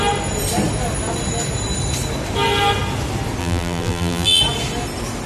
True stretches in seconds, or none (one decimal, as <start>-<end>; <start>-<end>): 0.0-3.4; 4.4-5.3